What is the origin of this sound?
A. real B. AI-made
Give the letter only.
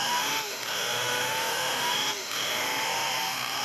B